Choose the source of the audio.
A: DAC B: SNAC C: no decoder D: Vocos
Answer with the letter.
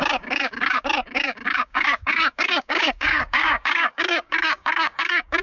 A